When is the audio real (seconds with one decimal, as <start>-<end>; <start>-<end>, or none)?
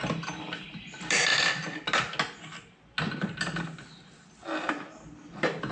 0.0-5.7